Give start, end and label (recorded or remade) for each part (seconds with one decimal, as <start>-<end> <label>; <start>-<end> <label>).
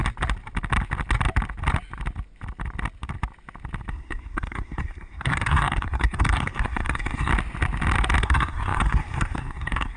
0.0-3.9 recorded; 3.9-7.3 remade; 7.3-8.2 recorded; 8.2-10.0 remade